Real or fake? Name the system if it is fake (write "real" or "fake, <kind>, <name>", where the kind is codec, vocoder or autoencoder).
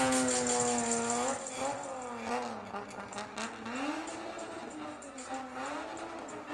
real